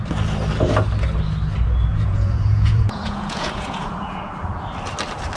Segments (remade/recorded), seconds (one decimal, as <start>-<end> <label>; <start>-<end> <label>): 0.0-1.9 recorded; 1.9-4.3 remade; 4.3-5.4 recorded